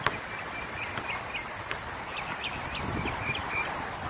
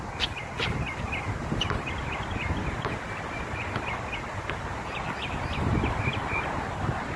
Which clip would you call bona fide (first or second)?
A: first